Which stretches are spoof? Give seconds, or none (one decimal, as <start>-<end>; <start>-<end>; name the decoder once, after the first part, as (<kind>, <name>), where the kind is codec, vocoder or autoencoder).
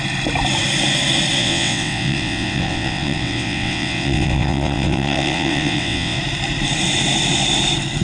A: 1.4-6.2 (vocoder, WaveNeXt)